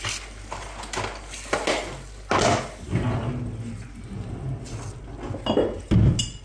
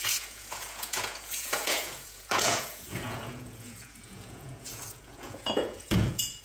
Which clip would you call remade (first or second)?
second